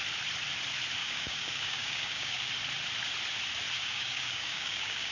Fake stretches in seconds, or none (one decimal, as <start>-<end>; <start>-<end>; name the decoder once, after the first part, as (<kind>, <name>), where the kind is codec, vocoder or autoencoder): 1.0-2.5 (codec, DAC); 3.8-5.1

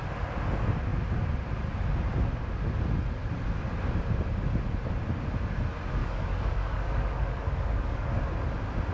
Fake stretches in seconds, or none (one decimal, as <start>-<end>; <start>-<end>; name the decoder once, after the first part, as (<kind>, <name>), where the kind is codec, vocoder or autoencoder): 6.0-8.2 (codec, DAC)

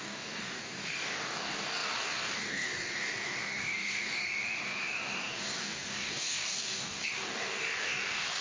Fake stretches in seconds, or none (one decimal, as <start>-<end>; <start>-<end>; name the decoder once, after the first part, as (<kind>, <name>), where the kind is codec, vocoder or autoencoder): 0.0-8.4 (codec, DAC)